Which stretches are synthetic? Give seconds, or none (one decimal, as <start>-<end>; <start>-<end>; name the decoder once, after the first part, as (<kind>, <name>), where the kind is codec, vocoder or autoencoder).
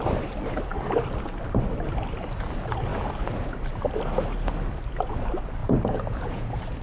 5.6-6.8 (vocoder, Vocos)